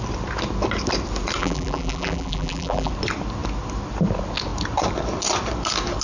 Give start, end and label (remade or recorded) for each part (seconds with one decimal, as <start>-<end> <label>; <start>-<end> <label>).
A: 0.0-1.4 recorded; 1.4-2.9 remade; 2.9-6.0 recorded